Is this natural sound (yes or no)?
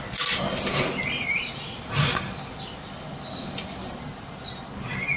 yes